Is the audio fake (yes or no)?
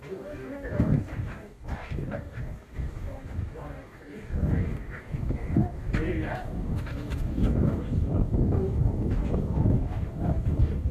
yes